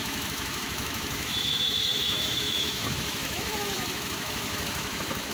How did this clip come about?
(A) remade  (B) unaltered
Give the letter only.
A